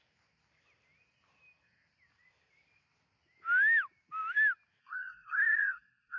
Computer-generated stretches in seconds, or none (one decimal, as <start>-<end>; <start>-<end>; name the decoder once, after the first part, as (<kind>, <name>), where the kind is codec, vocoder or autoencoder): 4.8-6.2 (codec, SNAC)